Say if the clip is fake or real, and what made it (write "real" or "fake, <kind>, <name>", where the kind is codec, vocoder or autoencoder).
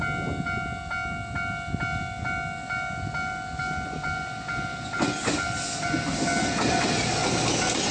real